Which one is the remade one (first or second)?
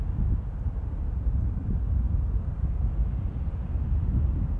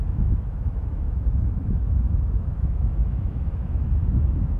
second